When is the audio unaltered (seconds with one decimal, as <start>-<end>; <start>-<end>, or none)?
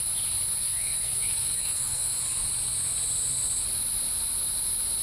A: 0.0-0.6; 2.2-5.0